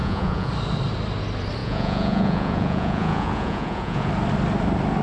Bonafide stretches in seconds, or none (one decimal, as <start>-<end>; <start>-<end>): 0.5-1.6; 4.1-5.0